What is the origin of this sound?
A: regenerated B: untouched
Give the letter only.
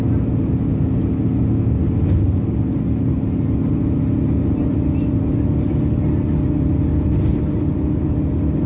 B